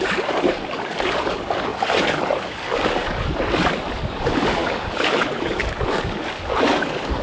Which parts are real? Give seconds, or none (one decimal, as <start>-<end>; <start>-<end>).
none